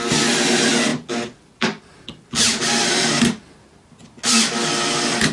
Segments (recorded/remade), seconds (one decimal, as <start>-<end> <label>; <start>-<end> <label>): 0.0-5.3 recorded